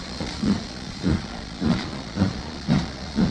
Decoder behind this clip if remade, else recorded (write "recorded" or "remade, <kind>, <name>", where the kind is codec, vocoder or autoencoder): remade, vocoder, Vocos